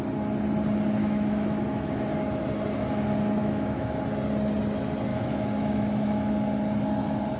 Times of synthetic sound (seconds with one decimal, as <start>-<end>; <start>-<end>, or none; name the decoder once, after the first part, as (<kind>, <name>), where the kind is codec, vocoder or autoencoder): 1.0-1.9 (autoencoder, DAC-VAE); 3.4-3.9; 5.1-6.3